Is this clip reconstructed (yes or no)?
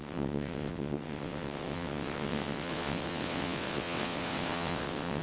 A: yes